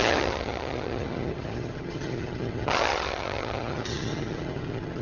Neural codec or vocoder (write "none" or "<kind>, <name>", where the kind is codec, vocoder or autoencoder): vocoder, HiFi-GAN